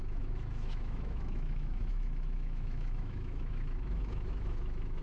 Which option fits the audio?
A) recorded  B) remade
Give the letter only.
B